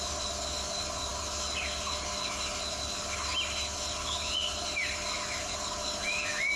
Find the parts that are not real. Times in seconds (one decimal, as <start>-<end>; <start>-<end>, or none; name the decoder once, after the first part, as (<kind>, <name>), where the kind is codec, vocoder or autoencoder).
none